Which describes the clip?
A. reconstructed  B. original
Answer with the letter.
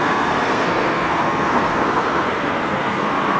A